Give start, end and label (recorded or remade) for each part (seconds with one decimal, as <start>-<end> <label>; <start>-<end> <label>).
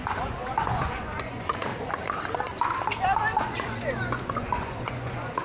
0.0-1.7 remade; 1.7-3.4 recorded; 3.4-5.4 remade